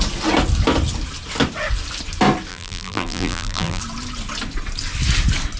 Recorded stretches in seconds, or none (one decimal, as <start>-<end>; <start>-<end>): 0.0-2.5; 3.8-5.6